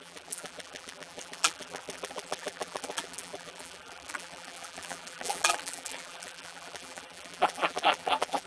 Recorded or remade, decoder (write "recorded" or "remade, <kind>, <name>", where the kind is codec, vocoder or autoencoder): remade, vocoder, BigVGAN v2